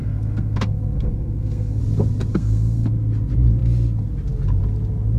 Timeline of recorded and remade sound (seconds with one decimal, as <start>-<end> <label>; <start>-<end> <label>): 0.0-1.8 remade; 1.8-2.3 recorded; 2.3-2.9 remade; 2.9-5.2 recorded